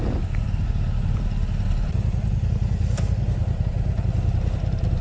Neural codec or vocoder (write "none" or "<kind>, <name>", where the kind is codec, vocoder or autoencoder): none